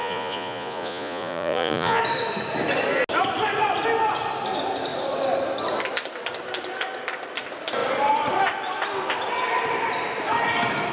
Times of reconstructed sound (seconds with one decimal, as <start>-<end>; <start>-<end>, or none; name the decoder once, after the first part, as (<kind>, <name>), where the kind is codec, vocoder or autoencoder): 0.0-2.0 (vocoder, Vocos)

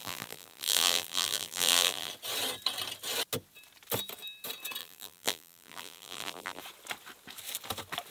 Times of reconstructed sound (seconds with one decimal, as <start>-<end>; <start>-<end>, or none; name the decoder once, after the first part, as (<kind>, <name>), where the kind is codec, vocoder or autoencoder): 0.0-2.1 (vocoder, BigVGAN v2); 4.8-6.6